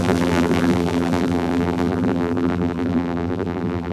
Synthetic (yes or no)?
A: yes